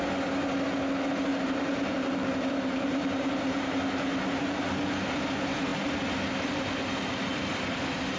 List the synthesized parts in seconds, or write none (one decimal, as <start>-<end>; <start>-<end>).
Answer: 1.3-3.8